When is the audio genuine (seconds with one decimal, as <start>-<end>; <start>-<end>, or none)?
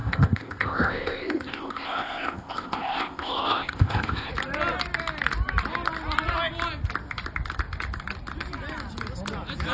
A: 4.3-9.7